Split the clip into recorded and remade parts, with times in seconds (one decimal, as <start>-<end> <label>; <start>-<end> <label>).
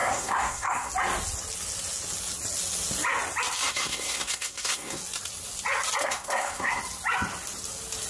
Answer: 0.0-0.9 remade; 0.9-3.7 recorded; 3.7-5.0 remade; 5.0-6.0 recorded; 6.0-6.8 remade; 6.8-8.1 recorded